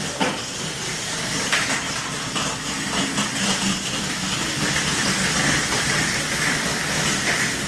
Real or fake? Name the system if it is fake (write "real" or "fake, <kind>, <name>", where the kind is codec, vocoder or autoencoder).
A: real